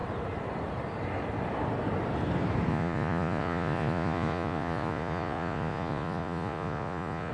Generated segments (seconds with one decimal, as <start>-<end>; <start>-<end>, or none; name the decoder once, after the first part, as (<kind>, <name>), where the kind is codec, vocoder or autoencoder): 2.7-7.3 (vocoder, Vocos)